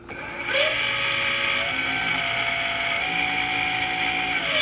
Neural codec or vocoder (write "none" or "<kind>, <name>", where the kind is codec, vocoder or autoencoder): none